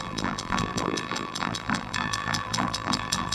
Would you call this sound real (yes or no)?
no